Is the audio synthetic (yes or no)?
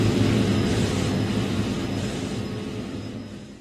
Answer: no